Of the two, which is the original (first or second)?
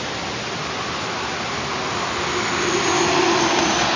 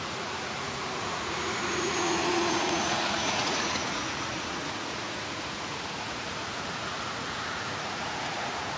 first